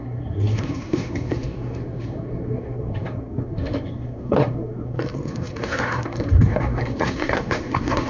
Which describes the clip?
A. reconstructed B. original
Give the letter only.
A